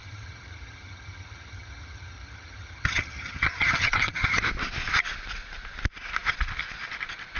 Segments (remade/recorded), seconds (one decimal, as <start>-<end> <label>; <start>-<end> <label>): 0.0-4.4 remade; 4.4-7.4 recorded